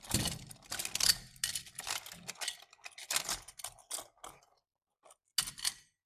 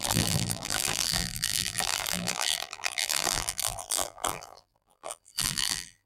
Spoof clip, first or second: second